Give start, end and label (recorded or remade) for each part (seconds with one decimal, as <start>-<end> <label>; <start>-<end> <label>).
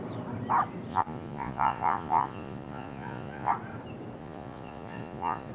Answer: 0.0-0.9 recorded; 0.9-3.5 remade; 3.5-4.2 recorded; 4.2-5.5 remade